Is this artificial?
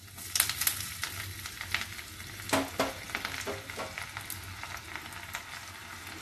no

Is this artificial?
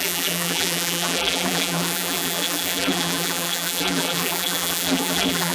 yes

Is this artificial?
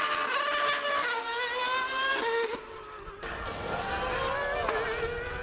no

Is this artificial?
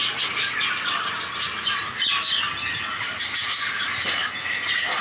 no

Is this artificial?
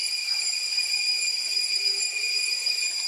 yes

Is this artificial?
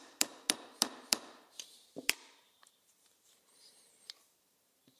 yes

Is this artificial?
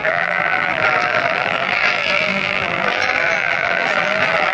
yes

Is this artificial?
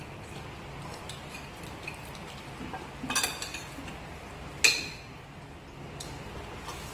no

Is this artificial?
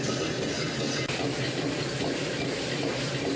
no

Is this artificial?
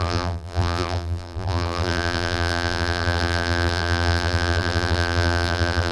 yes